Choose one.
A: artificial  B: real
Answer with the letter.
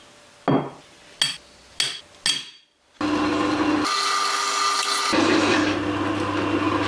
B